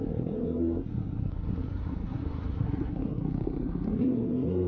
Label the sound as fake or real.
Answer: fake